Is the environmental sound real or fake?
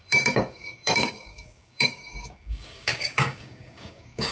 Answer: fake